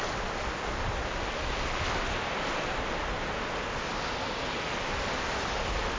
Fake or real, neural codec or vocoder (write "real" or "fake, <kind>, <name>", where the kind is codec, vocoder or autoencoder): real